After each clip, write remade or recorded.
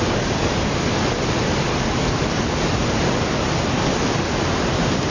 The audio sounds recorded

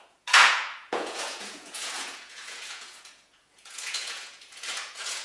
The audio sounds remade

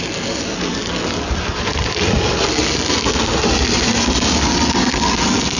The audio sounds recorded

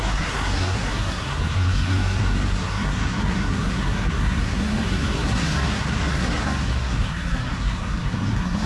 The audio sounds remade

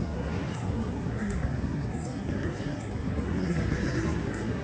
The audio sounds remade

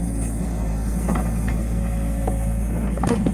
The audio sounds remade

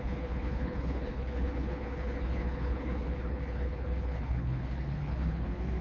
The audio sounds remade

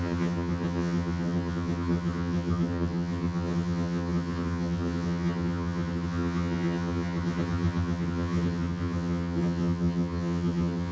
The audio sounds remade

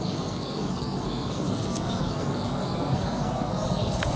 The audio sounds remade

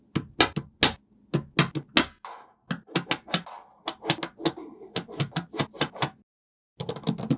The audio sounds recorded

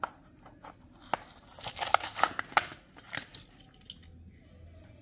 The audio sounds recorded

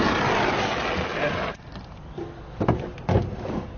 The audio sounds recorded